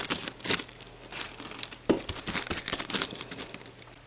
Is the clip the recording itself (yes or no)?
yes